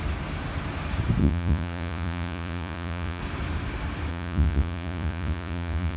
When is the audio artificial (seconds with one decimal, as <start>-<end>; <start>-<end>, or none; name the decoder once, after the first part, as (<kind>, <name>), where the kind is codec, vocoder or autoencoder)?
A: 1.2-3.2 (vocoder, Vocos); 4.1-6.0